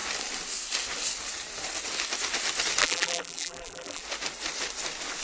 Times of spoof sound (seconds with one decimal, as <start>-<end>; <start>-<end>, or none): 2.8-4.0